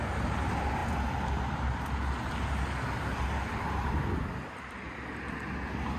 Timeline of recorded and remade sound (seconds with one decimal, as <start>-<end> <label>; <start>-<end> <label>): 0.0-6.0 recorded